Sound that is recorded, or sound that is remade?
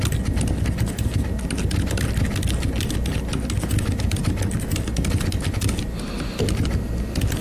recorded